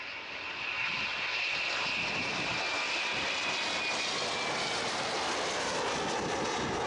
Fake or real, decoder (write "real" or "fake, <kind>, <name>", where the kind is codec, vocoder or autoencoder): real